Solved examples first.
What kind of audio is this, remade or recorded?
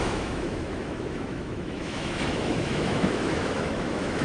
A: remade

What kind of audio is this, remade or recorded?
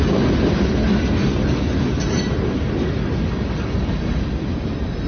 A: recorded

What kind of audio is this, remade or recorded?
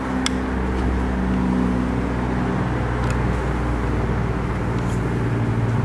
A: recorded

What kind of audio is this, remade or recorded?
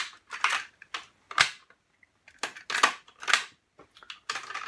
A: recorded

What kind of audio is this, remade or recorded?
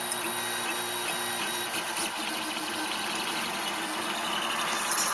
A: recorded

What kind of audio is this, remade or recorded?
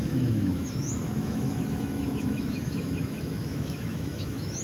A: remade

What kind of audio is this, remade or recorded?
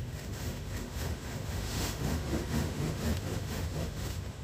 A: remade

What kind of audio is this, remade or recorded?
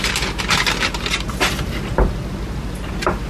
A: recorded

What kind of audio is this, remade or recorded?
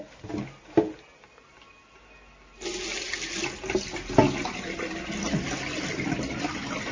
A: recorded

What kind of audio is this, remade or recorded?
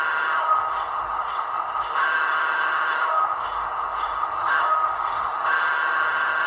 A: remade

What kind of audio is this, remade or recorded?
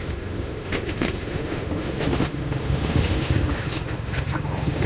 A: remade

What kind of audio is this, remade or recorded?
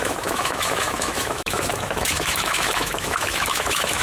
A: remade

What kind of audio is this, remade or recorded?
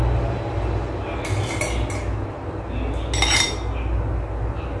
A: recorded